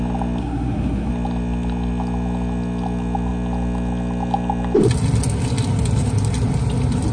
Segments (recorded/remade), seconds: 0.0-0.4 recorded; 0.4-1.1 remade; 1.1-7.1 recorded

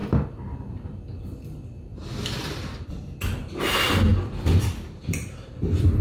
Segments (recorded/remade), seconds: 0.0-3.6 recorded; 3.6-6.0 remade

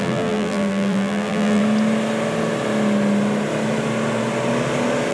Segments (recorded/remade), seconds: 0.0-1.6 remade; 1.6-5.1 recorded

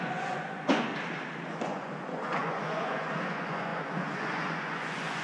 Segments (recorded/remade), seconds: 0.0-0.9 remade; 0.9-1.5 recorded; 1.5-5.2 remade

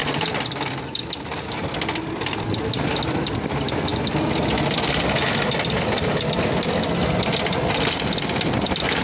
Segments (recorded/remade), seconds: 0.0-9.0 recorded

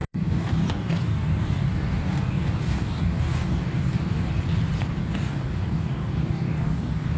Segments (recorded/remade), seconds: 0.0-4.3 remade; 4.3-5.0 recorded; 5.0-7.2 remade